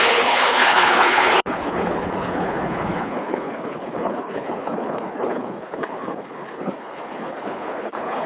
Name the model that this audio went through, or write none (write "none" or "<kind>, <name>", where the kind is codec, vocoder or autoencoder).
codec, HILCodec